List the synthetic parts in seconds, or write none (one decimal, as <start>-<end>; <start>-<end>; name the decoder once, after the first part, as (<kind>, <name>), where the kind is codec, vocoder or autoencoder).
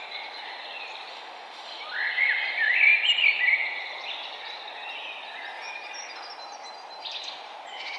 1.1-1.8 (autoencoder, DAC-VAE)